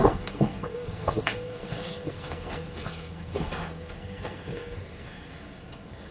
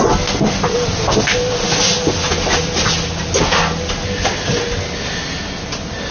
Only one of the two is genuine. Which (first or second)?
second